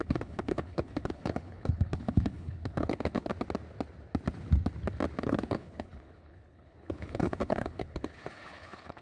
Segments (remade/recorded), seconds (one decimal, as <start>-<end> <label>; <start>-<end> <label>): 0.0-3.3 remade; 3.3-5.2 recorded; 5.2-9.0 remade